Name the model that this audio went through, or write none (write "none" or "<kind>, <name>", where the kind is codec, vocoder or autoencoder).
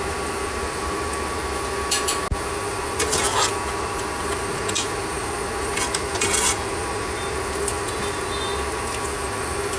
none